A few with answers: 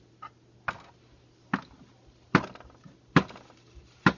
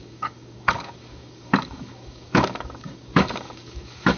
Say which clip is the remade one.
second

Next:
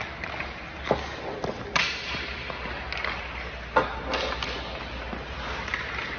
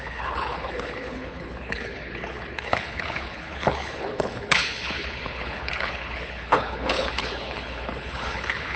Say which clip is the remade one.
second